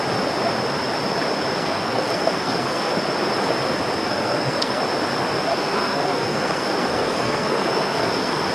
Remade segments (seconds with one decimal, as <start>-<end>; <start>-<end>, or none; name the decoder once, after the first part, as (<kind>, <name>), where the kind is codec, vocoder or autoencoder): 1.5-2.9 (codec, SNAC); 4.0-4.8; 5.5-8.5